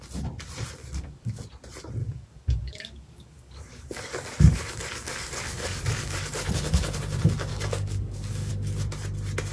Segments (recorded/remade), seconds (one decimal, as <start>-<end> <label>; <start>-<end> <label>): 0.0-0.8 recorded; 0.8-1.4 remade; 1.4-2.0 recorded; 2.0-6.5 remade; 6.5-7.5 recorded; 7.5-8.5 remade; 8.5-9.5 recorded